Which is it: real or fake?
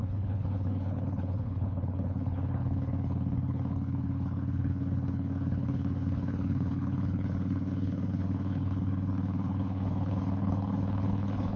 fake